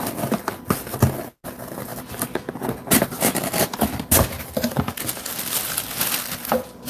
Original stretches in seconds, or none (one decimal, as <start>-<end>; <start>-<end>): 0.0-6.9